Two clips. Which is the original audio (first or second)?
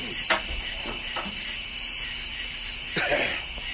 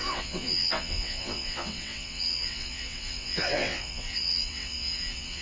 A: first